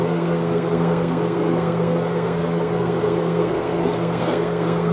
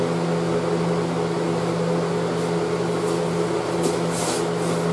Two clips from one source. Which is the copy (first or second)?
first